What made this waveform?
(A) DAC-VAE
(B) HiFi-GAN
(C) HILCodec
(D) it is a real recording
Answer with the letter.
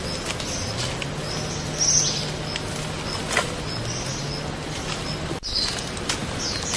D